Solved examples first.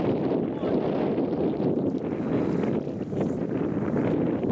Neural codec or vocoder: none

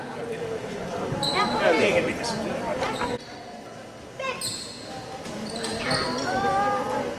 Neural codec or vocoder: none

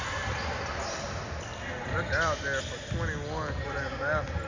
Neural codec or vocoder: none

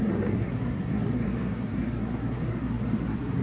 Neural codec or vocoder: codec, SNAC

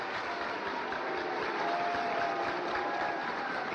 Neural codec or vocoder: none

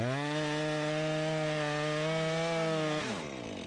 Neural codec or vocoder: none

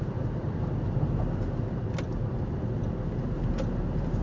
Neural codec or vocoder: none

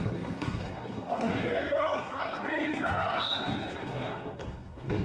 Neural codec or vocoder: codec, SNAC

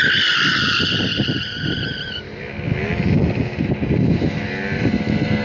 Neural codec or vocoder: none